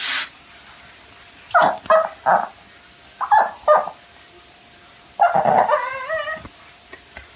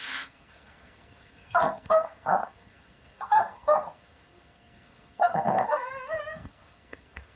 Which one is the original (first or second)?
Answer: first